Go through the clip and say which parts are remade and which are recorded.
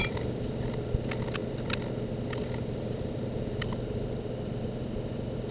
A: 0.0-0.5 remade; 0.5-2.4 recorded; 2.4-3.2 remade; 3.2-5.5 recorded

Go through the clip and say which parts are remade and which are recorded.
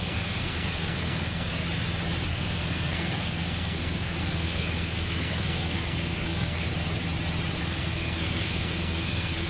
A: 0.0-1.6 remade; 1.6-2.3 recorded; 2.3-6.7 remade; 6.7-7.6 recorded; 7.6-9.5 remade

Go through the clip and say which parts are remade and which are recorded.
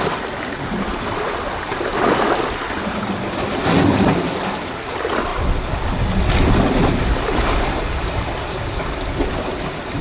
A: 0.0-10.0 recorded